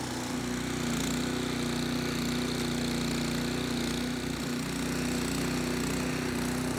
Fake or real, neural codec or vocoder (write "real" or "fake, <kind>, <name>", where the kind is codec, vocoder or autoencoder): real